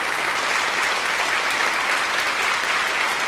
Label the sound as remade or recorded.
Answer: recorded